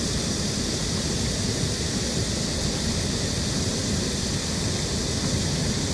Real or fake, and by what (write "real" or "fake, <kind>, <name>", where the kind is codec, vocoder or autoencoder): real